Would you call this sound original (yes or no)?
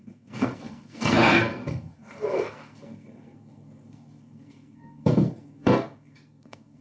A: no